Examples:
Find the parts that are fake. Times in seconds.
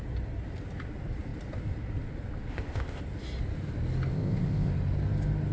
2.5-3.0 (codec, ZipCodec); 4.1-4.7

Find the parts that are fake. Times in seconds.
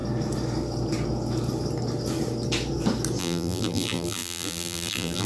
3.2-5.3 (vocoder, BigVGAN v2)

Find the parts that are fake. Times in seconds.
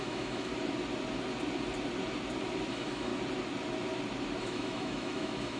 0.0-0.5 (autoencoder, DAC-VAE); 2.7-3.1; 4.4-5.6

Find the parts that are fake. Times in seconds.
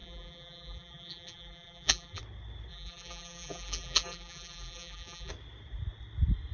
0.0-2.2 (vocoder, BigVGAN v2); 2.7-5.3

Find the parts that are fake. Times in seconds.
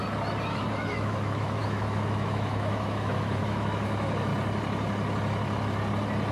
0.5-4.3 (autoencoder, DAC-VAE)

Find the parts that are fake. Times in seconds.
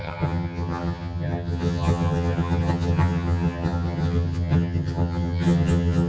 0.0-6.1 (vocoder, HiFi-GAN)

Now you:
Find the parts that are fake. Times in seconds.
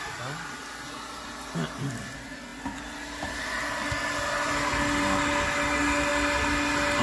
none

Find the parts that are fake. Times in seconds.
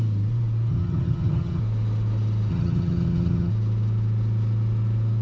0.7-1.6 (vocoder, HiFi-GAN); 2.5-3.5